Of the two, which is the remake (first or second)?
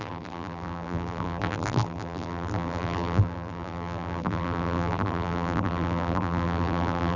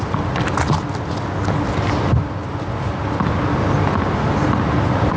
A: first